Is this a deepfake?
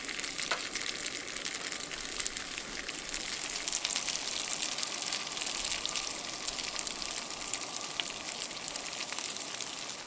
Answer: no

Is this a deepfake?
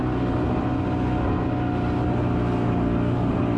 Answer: no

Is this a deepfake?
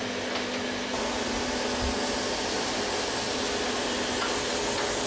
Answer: no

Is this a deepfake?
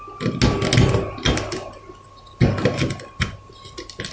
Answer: no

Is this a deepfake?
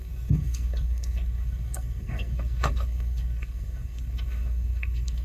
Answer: yes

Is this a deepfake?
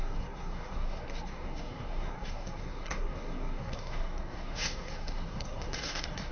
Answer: yes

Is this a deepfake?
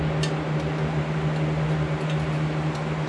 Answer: no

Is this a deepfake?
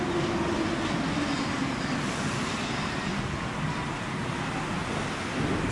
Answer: no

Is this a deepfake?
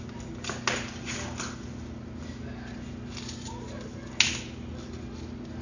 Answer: no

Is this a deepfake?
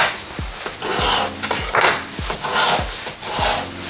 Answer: no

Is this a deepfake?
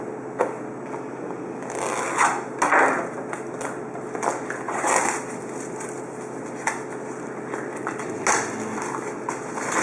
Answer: no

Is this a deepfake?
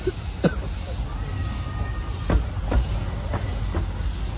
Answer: no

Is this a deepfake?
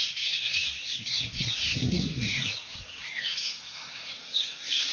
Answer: yes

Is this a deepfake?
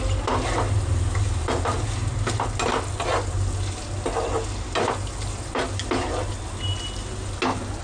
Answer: no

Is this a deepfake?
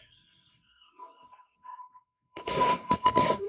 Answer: yes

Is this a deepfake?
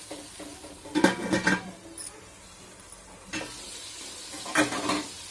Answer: no